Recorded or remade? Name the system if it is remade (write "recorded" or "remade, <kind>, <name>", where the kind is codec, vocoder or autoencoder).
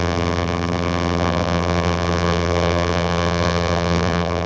remade, vocoder, BigVGAN v2